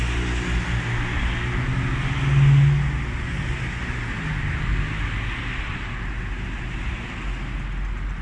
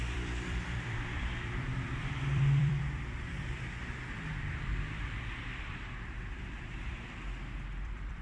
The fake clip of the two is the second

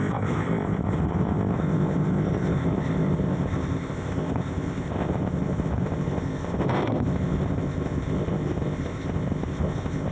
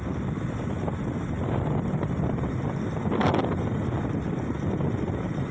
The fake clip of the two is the first